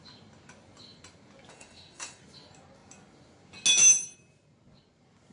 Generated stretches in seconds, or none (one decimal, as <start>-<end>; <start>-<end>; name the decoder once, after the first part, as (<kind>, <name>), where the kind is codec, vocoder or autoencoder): 1.5-2.2 (autoencoder, DAC-VAE)